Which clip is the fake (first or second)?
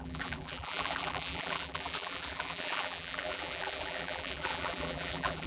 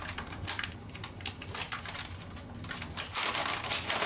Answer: first